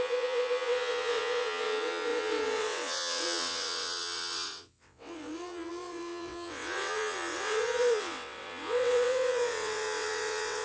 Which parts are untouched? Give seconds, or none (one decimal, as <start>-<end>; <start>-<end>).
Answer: none